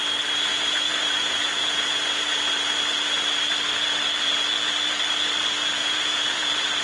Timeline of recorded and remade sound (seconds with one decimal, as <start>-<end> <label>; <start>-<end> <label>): 0.0-0.5 recorded; 0.5-2.2 remade; 2.2-5.8 recorded; 5.8-6.8 remade